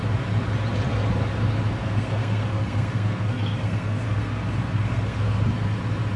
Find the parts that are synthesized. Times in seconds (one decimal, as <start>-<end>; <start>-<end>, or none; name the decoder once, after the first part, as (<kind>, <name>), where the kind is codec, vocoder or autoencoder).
1.8-5.4 (codec, SNAC)